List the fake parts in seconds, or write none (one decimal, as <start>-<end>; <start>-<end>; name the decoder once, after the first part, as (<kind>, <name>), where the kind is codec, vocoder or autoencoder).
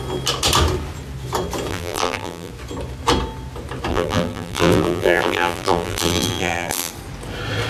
1.7-2.5 (vocoder, BigVGAN v2); 3.9-6.9